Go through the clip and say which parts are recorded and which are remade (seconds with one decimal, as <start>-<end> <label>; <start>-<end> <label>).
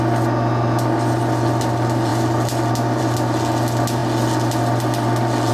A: 0.0-5.5 recorded